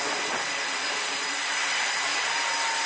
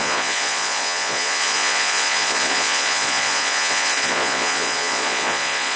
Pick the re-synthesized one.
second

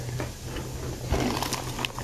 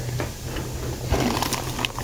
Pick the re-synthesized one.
second